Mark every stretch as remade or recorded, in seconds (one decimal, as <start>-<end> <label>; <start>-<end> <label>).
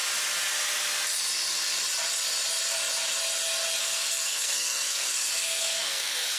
0.0-3.8 recorded; 3.8-6.4 remade